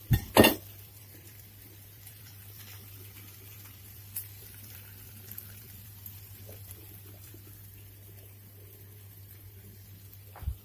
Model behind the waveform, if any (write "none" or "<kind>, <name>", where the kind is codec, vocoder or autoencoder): vocoder, BigVGAN v2